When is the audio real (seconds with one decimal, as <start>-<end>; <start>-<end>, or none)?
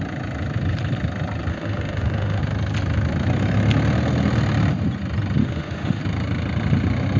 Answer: 0.0-1.5; 2.4-5.4; 6.0-7.2